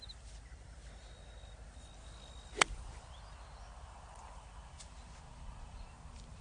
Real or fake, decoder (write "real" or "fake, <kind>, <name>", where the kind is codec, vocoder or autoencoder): real